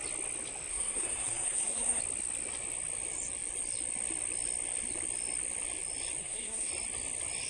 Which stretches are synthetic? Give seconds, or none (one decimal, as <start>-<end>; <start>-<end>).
0.7-2.0; 6.2-6.7